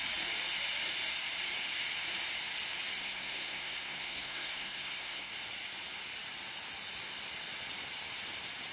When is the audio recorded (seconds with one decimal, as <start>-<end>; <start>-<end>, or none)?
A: 0.0-3.0; 5.3-8.7